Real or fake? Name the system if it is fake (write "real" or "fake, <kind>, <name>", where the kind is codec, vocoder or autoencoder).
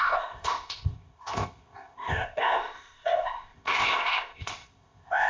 fake, codec, ZipCodec